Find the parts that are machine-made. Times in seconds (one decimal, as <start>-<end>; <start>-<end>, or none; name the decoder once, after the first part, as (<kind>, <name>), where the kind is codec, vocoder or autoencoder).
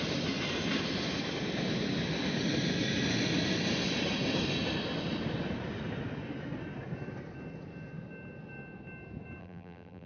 9.4-10.1 (vocoder, BigVGAN v2)